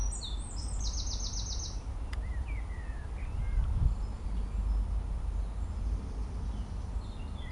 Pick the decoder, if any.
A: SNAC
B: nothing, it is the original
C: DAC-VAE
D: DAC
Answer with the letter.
B